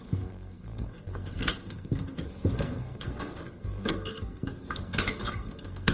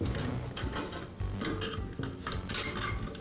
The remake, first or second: first